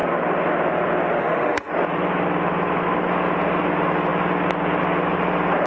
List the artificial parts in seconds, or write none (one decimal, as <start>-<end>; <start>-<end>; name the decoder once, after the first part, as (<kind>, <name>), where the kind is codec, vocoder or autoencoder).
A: 1.2-1.7 (autoencoder, DAC-VAE)

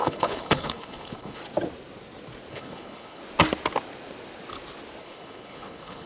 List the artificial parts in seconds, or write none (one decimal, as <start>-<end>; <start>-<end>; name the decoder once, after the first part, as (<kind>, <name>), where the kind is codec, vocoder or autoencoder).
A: 0.0-1.4 (codec, HILCodec); 2.5-3.2; 5.0-6.1